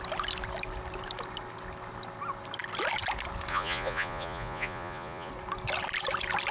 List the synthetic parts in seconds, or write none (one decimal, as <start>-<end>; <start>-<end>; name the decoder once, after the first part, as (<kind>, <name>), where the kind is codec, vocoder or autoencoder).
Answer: 3.5-5.3 (vocoder, Vocos)